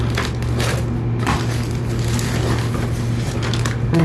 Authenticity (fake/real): real